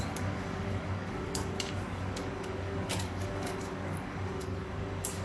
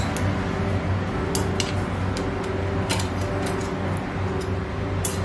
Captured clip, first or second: second